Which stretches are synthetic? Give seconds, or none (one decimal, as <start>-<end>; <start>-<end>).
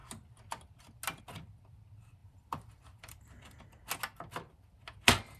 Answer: 2.2-3.6